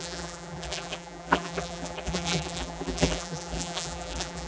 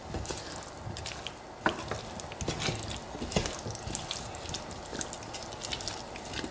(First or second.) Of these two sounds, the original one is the second